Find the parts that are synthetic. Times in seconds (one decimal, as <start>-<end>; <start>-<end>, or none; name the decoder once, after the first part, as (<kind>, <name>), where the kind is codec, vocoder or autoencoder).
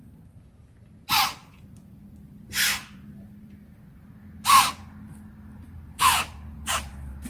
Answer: 1.4-4.0 (vocoder, BigVGAN v2); 5.5-7.3